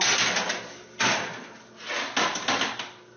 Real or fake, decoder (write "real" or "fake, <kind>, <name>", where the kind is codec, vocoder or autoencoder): real